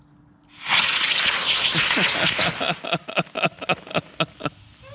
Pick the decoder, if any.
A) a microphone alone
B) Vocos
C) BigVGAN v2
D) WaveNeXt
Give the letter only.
A